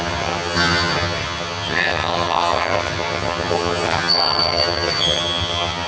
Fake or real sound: fake